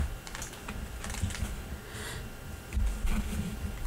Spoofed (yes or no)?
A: no